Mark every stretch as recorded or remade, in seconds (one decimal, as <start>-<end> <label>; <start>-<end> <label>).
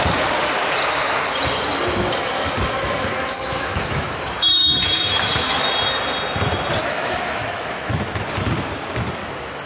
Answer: 0.0-3.1 recorded; 3.1-5.6 remade; 5.6-6.8 recorded; 6.8-7.9 remade; 7.9-9.2 recorded; 9.2-9.7 remade